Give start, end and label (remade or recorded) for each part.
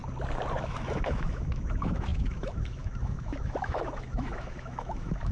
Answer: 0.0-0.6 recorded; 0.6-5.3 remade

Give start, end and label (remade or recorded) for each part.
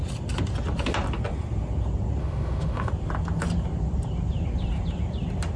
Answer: 0.0-2.2 recorded; 2.2-2.9 remade; 2.9-5.6 recorded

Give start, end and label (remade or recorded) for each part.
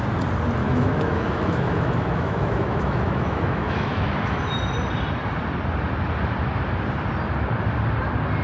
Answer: 0.0-0.6 recorded; 0.6-4.4 remade; 4.4-8.4 recorded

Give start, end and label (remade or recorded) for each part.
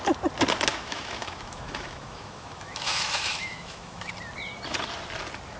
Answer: 0.0-0.7 recorded; 0.7-4.1 remade; 4.1-5.6 recorded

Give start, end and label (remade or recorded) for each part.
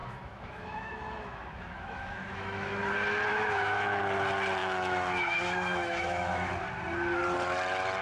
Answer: 0.0-2.9 remade; 2.9-3.3 recorded; 3.3-4.0 remade; 4.0-4.6 recorded; 4.6-6.5 remade; 6.5-8.0 recorded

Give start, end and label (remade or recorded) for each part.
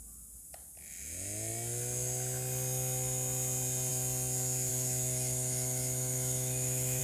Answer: 0.0-4.7 recorded; 4.7-7.0 remade